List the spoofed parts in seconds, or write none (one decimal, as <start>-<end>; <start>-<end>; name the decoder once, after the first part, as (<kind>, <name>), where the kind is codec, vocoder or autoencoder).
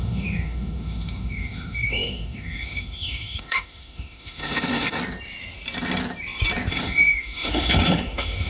0.0-5.0 (autoencoder, DAC-VAE); 6.7-8.5